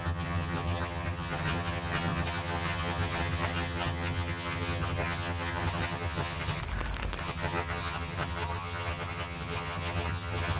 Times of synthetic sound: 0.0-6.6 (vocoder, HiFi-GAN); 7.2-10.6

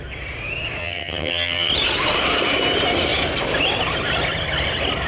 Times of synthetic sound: 0.8-1.7 (vocoder, HiFi-GAN)

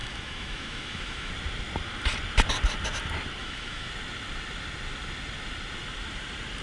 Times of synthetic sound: 0.0-1.3 (autoencoder, DAC-VAE); 3.4-3.9

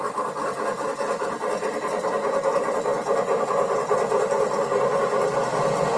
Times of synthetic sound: none

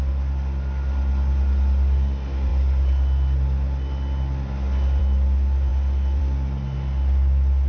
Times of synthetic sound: none

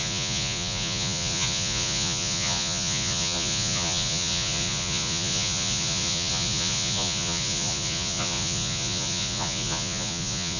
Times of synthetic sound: 0.0-10.6 (vocoder, Vocos)

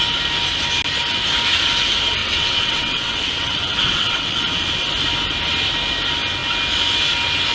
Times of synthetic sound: 2.2-4.4 (vocoder, WaveNeXt)